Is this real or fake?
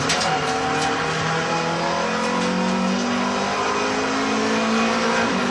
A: real